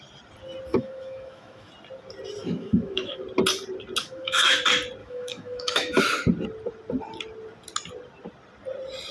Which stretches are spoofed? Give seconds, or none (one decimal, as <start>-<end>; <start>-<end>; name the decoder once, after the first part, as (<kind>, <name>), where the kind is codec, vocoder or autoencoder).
0.7-1.7 (autoencoder, DAC-VAE); 2.4-3.2; 4.0-4.6; 5.0-6.0